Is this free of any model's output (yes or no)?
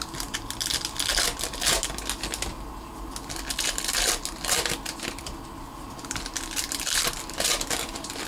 yes